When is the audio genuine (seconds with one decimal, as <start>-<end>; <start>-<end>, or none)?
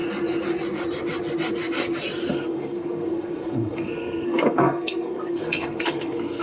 0.0-2.3